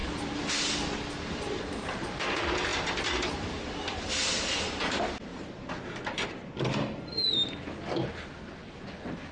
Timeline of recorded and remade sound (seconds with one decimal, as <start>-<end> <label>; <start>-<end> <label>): 0.0-0.5 remade; 0.5-9.3 recorded